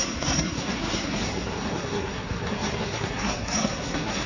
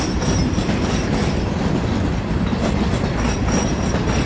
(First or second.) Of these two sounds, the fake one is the first